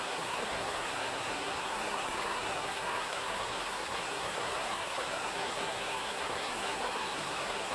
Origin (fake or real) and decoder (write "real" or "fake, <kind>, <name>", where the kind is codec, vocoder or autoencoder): fake, codec, SNAC